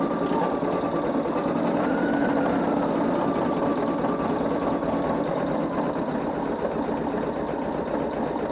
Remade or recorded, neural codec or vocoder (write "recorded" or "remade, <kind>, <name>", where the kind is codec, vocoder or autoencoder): recorded